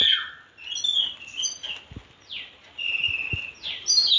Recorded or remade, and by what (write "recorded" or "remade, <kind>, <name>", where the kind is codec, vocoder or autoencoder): recorded